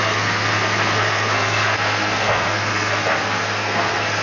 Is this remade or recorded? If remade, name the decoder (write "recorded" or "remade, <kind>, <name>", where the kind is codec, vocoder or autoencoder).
remade, codec, SNAC